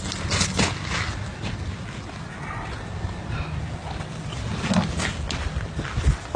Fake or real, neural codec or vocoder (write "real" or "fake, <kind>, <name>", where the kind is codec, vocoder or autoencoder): real